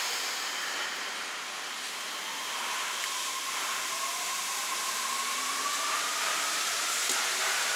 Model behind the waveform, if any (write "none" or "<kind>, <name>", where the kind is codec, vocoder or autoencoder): vocoder, BigVGAN v2